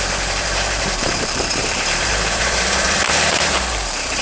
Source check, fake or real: fake